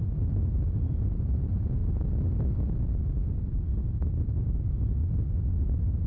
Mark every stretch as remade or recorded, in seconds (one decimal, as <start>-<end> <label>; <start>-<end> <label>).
0.0-1.8 remade; 1.8-3.3 recorded; 3.3-5.0 remade; 5.0-6.1 recorded